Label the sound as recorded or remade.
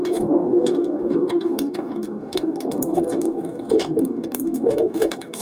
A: remade